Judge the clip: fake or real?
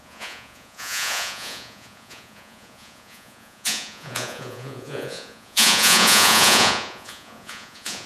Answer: fake